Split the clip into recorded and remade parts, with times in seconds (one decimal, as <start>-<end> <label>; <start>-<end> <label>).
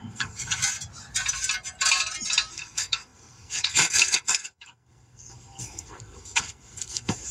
0.0-0.6 remade; 0.6-2.5 recorded; 2.5-7.3 remade